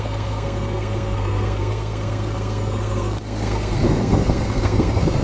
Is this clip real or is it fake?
fake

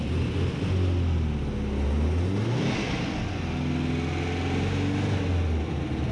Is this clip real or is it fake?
real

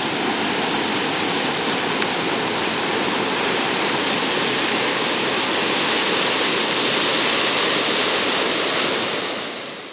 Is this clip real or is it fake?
real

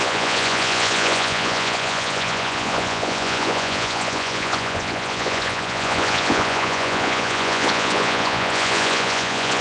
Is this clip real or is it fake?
fake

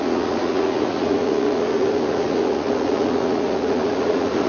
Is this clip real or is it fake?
fake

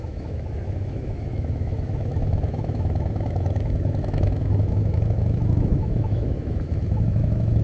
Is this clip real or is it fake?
fake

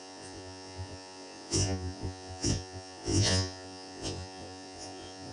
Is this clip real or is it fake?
fake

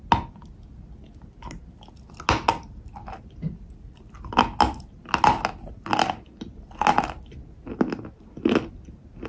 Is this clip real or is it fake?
real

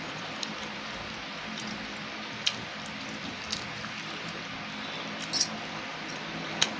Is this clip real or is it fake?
real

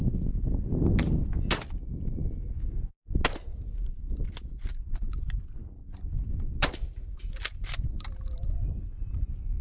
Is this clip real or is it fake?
real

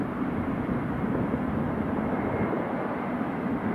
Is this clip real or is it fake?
real